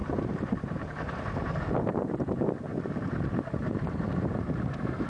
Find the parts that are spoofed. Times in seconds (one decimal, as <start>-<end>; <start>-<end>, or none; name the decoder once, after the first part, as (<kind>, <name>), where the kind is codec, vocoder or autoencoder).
0.0-2.7 (vocoder, BigVGAN v2); 3.3-5.1